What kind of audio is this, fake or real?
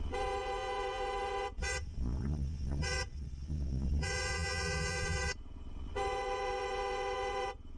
fake